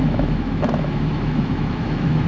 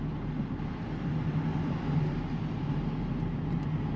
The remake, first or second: first